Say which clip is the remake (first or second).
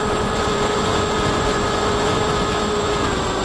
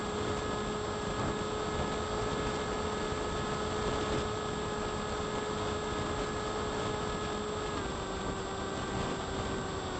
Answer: first